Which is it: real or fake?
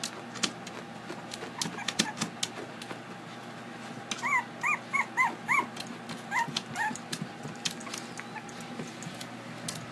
real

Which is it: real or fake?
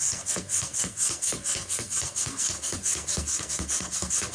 fake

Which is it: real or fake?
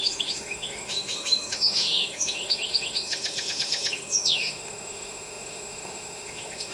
fake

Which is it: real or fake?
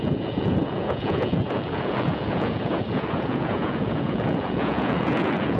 fake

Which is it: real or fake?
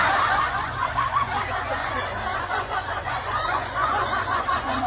fake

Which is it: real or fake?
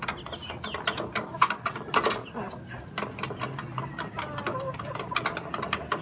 real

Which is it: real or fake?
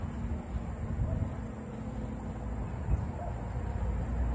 real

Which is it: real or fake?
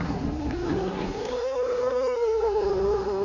fake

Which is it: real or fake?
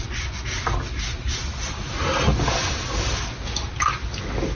real